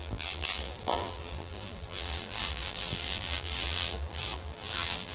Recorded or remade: remade